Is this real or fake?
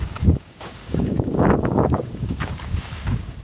fake